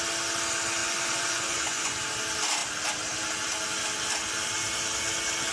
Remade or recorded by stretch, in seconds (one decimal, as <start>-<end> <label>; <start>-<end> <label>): 0.0-0.8 recorded; 0.8-2.0 remade; 2.0-5.5 recorded